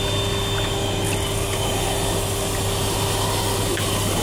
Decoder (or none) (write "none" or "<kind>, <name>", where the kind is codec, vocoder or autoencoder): none